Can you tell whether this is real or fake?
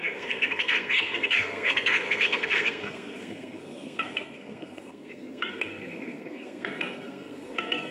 fake